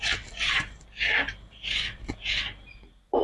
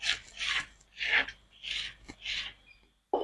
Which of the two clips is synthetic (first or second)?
first